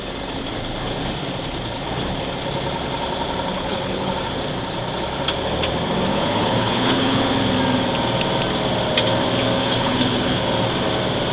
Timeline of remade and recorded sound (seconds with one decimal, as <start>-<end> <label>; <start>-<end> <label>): 0.0-3.5 recorded; 3.5-4.1 remade; 4.1-6.1 recorded; 6.1-7.2 remade; 7.2-9.6 recorded; 9.6-10.4 remade; 10.4-11.3 recorded